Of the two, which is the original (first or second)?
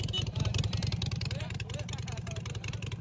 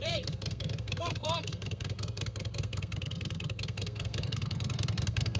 first